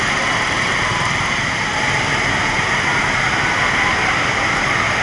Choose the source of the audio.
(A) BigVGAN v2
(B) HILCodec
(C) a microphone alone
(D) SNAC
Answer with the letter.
C